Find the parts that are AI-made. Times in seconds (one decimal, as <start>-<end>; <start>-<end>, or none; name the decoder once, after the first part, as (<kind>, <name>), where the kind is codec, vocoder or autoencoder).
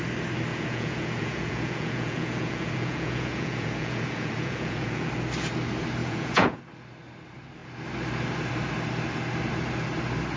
0.5-5.1 (vocoder, Vocos); 6.0-6.6